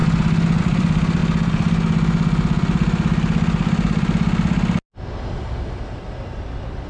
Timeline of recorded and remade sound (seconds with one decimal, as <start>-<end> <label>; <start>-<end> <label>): 0.0-0.6 recorded; 0.6-1.2 remade; 1.2-5.3 recorded; 5.3-6.9 remade